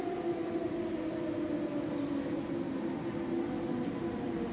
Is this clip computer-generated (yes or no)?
no